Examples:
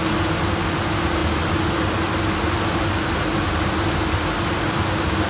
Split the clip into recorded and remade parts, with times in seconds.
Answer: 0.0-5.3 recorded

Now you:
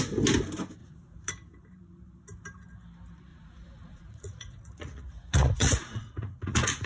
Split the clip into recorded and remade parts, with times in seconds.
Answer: 0.0-0.8 recorded; 0.8-1.3 remade; 1.3-3.3 recorded; 3.3-6.9 remade

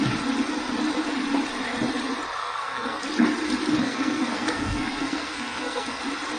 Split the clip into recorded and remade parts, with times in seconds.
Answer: 0.0-2.4 recorded; 2.4-3.0 remade; 3.0-3.8 recorded; 3.8-6.0 remade; 6.0-6.4 recorded

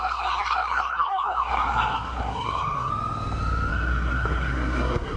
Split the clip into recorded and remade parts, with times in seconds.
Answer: 0.0-2.9 remade; 2.9-3.7 recorded; 3.7-5.2 remade